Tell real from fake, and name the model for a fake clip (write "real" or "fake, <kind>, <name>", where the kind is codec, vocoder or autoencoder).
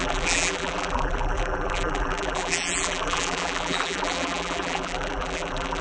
fake, vocoder, BigVGAN v2